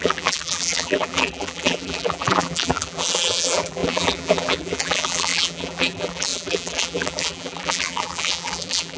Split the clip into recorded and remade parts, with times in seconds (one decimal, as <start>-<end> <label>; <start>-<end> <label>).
0.0-9.0 remade